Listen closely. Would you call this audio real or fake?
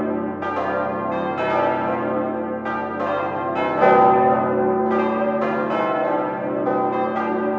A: real